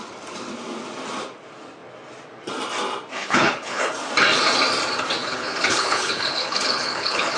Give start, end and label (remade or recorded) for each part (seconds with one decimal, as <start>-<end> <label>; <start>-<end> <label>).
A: 0.0-3.2 recorded; 3.2-3.9 remade; 3.9-5.2 recorded; 5.2-7.4 remade